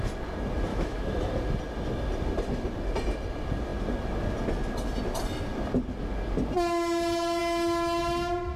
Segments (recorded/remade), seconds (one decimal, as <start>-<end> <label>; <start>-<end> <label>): 0.0-0.7 recorded; 0.7-1.3 remade; 1.3-8.6 recorded